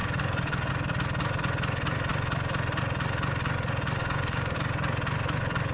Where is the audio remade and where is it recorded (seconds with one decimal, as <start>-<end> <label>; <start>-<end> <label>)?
0.0-0.7 remade; 0.7-4.0 recorded; 4.0-4.6 remade; 4.6-5.7 recorded